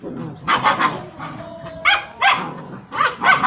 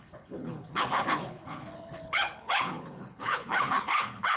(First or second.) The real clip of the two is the first